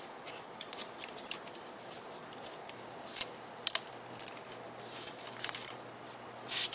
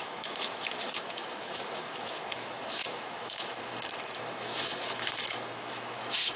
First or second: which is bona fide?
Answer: first